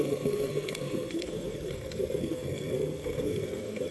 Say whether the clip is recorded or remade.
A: remade